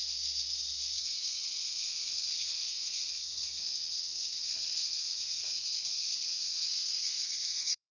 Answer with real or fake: fake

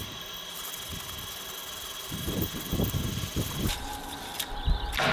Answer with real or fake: fake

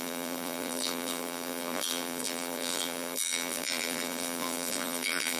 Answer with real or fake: fake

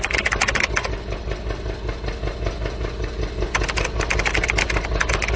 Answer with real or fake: real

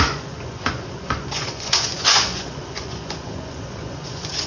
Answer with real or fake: fake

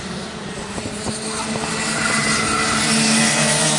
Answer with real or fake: real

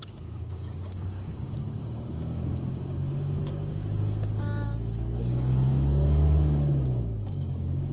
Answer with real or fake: fake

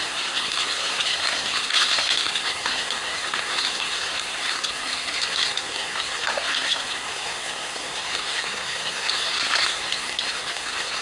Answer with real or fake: fake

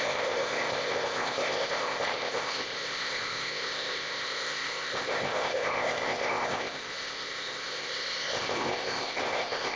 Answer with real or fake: fake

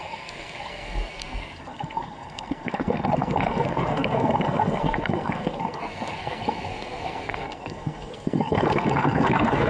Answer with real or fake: fake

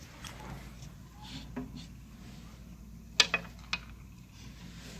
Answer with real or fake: real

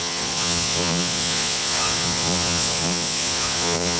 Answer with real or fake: fake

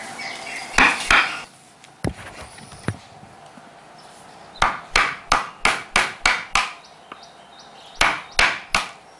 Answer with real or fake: real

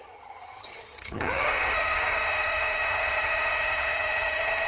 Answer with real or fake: fake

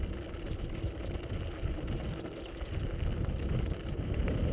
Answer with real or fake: real